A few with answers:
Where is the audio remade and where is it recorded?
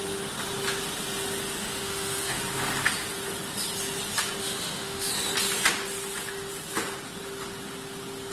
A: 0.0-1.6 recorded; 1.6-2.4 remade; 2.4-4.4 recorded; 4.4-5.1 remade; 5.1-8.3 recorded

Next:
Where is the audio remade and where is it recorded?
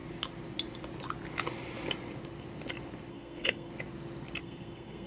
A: 0.0-3.1 recorded; 3.1-3.7 remade; 3.7-4.4 recorded; 4.4-5.1 remade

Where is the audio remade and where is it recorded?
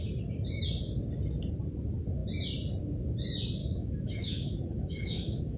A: 0.0-3.6 recorded; 3.6-5.6 remade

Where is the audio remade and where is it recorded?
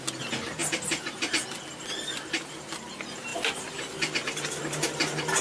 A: 0.0-5.4 recorded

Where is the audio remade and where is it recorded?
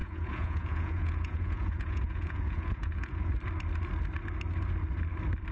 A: 0.0-3.3 remade; 3.3-5.5 recorded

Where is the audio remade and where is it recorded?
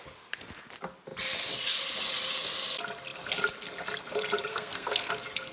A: 0.0-4.5 recorded; 4.5-5.1 remade; 5.1-5.5 recorded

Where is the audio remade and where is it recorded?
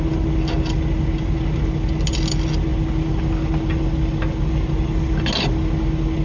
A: 0.0-6.2 recorded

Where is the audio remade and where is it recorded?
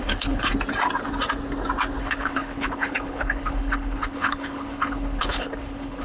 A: 0.0-0.5 remade; 0.5-2.0 recorded; 2.0-6.0 remade